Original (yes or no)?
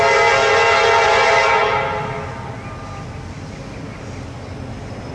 yes